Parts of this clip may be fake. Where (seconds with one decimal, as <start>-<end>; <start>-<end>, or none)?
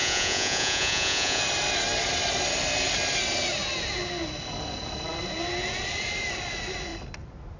0.0-1.4